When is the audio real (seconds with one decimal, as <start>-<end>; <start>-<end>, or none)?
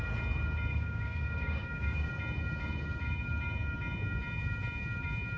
0.0-0.7; 2.1-5.4